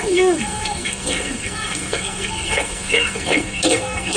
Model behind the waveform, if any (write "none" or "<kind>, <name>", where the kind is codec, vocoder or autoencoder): codec, SNAC